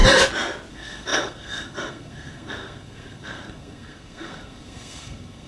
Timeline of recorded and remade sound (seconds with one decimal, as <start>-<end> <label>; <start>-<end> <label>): 0.0-0.7 recorded; 0.7-5.5 remade